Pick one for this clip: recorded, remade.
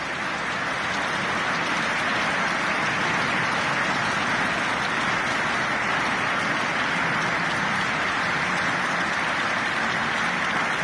recorded